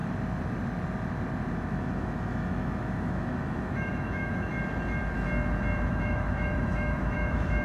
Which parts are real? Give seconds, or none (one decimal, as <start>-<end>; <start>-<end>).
0.0-1.5; 4.5-5.9